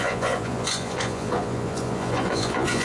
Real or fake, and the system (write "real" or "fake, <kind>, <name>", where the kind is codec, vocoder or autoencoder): fake, vocoder, Vocos